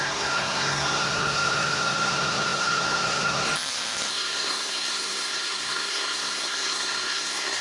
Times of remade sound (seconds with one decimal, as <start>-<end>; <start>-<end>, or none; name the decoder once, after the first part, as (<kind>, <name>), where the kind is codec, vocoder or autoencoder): 0.0-3.5 (codec, SNAC); 4.1-7.6